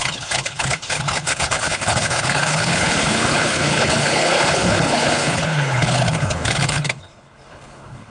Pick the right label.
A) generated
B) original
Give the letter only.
A